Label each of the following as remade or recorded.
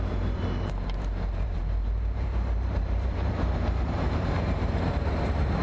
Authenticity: remade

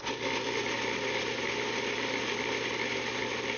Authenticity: recorded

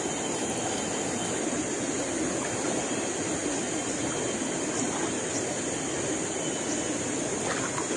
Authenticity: recorded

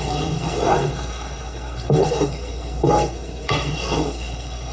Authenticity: remade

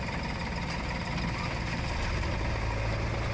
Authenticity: recorded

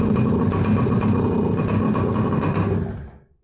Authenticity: recorded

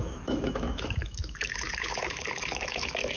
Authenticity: remade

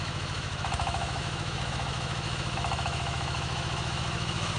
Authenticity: remade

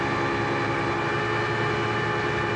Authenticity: recorded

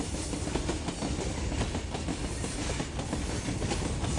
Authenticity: recorded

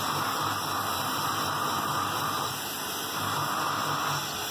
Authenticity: recorded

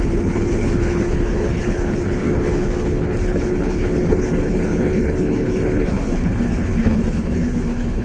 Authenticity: remade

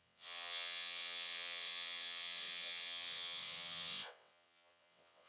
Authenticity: remade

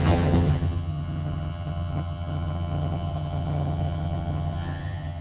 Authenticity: remade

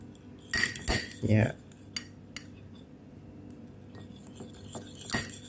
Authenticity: recorded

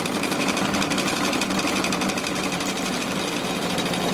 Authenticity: recorded